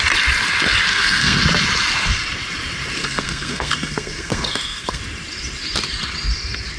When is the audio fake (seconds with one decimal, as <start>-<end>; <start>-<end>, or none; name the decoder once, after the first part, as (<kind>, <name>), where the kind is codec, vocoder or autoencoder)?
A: 0.9-1.4 (codec, SNAC); 3.0-5.0

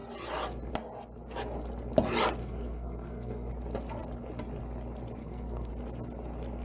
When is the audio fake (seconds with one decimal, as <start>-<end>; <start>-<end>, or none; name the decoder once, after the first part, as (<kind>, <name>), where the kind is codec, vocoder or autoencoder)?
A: 2.4-3.5 (codec, SNAC); 5.2-5.7

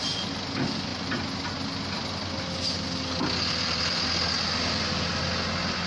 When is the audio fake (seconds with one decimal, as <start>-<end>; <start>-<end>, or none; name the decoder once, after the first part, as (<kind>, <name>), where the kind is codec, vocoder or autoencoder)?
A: none

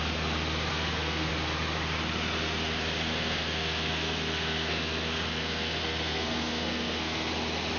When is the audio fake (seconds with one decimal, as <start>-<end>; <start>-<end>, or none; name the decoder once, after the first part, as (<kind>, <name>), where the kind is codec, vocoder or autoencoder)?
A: 0.7-1.3 (codec, SNAC); 3.1-7.3

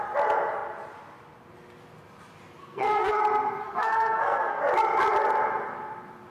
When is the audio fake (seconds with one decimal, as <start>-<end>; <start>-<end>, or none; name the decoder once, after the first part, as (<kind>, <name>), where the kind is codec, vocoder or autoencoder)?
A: 2.6-3.2 (codec, SNAC); 3.6-4.6

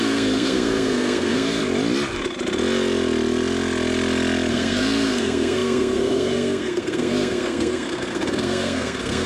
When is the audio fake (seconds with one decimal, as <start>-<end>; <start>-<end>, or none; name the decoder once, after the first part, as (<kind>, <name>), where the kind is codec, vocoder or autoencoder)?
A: 0.0-1.6 (codec, SNAC); 4.5-9.3